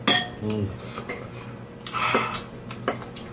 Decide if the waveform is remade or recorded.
recorded